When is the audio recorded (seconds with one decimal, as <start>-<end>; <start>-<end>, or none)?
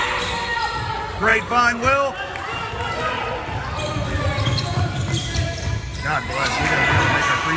0.0-7.6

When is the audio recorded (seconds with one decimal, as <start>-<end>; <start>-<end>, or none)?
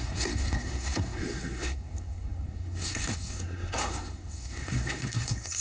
none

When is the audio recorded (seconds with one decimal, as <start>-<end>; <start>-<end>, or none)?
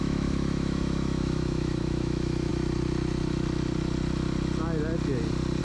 2.5-5.6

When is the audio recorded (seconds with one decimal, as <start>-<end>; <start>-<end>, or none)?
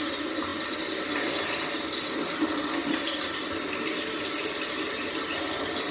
0.0-5.9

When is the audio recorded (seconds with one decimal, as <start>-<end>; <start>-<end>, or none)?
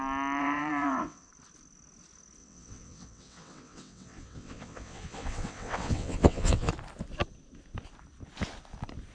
0.0-0.4; 1.3-2.4; 6.7-9.1